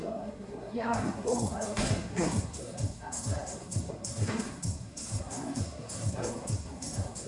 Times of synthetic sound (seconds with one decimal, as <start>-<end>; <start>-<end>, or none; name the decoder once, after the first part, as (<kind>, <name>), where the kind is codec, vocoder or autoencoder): 0.0-7.3 (codec, SNAC)